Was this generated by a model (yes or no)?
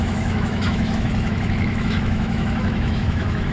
yes